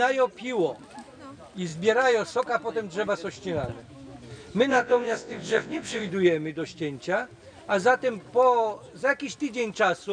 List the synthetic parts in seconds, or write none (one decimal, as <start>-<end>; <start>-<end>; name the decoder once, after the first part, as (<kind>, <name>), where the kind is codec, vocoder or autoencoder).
4.7-6.1 (vocoder, WaveNeXt)